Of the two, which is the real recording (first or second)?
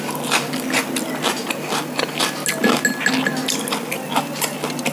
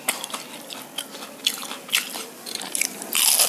first